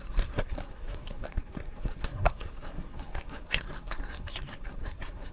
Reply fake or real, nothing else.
fake